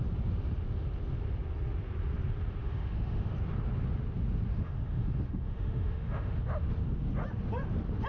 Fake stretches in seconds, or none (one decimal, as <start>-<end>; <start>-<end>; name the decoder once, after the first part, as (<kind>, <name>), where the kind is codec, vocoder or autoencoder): 2.6-3.3 (autoencoder, DAC-VAE); 4.5-6.4